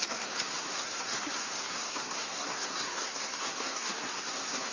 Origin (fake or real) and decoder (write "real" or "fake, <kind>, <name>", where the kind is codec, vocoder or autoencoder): fake, codec, SNAC